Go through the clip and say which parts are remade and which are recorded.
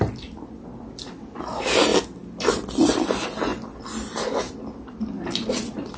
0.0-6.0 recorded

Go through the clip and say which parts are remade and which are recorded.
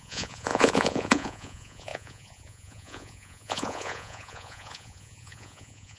0.0-6.0 remade